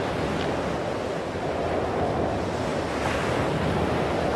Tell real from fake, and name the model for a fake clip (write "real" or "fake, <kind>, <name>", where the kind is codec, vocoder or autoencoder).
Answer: real